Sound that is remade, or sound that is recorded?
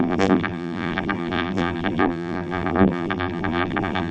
remade